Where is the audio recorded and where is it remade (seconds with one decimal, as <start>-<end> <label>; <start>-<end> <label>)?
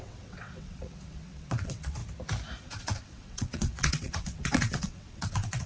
0.0-2.0 remade; 2.0-2.6 recorded; 2.6-5.7 remade